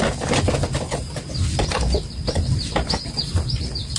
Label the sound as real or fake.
real